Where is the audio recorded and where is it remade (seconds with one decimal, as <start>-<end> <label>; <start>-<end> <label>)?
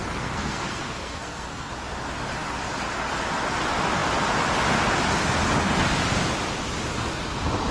0.0-1.7 remade; 1.7-7.7 recorded